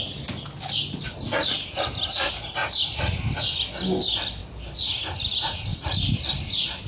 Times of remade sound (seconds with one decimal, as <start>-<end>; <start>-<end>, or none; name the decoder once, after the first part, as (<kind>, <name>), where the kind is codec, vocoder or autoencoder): 4.4-5.0 (vocoder, BigVGAN v2); 5.7-6.9